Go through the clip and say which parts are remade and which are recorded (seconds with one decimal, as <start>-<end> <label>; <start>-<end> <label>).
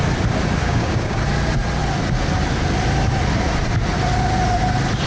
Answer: 0.0-0.6 recorded; 0.6-1.2 remade; 1.2-5.1 recorded